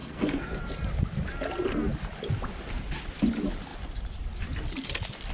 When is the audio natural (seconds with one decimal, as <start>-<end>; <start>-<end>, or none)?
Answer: 0.6-5.3